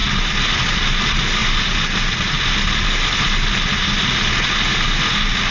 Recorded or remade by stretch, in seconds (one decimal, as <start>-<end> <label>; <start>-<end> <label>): 0.0-5.5 recorded